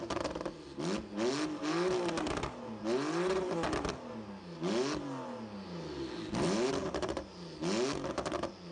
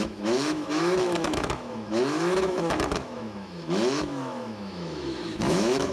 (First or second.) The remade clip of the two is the second